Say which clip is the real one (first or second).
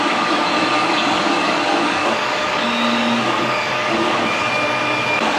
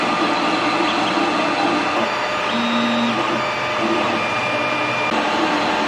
second